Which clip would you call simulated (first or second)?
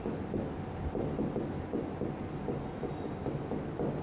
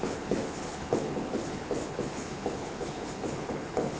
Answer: second